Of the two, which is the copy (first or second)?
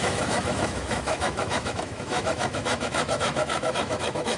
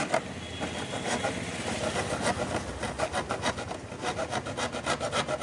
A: first